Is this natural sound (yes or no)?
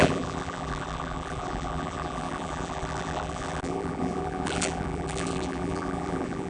no